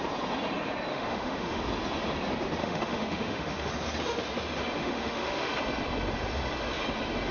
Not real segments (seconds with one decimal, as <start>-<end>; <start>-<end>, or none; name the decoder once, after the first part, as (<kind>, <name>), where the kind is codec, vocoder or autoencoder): 0.9-1.6 (autoencoder, DAC-VAE); 2.6-3.7; 4.8-5.5